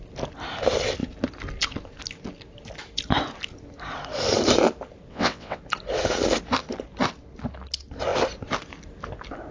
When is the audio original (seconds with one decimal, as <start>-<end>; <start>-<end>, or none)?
0.0-5.1; 5.6-9.5